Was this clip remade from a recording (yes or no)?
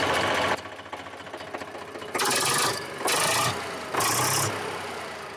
no